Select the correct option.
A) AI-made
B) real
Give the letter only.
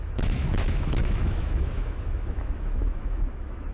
A